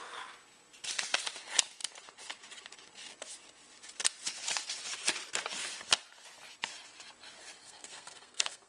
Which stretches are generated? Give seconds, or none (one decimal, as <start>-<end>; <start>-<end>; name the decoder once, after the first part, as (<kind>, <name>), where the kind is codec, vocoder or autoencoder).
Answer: 7.6-8.7 (codec, SNAC)